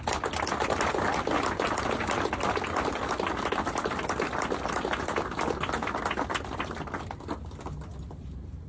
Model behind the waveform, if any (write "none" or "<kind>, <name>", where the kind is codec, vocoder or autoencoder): none